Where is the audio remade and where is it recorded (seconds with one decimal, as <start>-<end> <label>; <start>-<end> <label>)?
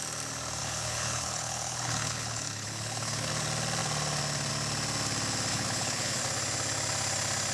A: 0.0-0.6 recorded; 0.6-3.3 remade; 3.3-5.5 recorded; 5.5-6.2 remade; 6.2-7.5 recorded